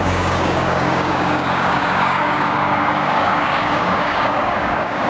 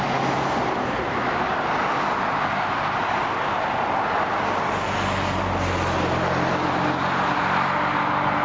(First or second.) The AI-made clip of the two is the first